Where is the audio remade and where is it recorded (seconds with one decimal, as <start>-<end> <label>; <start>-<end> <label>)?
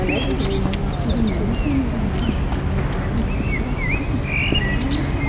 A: 0.0-5.3 recorded